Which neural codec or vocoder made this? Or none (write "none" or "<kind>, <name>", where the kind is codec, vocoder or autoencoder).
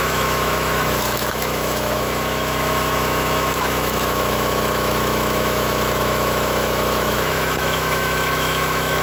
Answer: autoencoder, DAC-VAE